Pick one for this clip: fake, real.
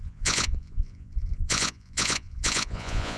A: fake